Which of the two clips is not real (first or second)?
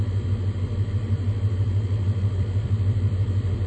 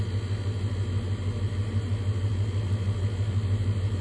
first